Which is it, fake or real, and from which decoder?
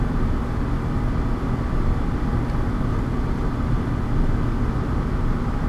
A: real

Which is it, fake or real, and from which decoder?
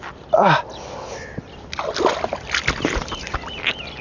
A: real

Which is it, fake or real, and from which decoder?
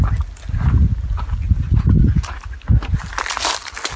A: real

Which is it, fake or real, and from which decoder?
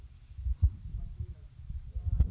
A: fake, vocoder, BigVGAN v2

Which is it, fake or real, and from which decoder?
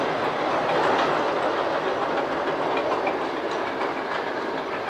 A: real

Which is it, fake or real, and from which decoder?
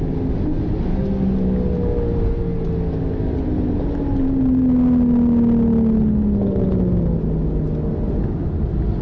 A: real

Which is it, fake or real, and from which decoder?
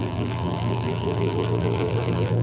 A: fake, vocoder, BigVGAN v2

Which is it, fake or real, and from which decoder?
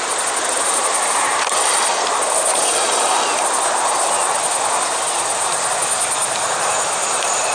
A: real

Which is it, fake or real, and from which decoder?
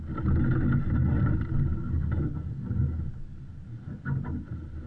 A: real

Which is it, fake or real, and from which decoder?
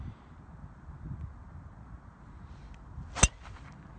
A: real